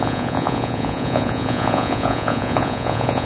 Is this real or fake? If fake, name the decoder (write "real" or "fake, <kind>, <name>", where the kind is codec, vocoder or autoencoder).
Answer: fake, vocoder, Vocos